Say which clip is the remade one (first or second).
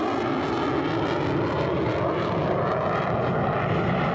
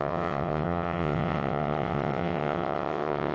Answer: second